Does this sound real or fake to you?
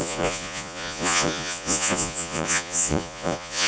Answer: fake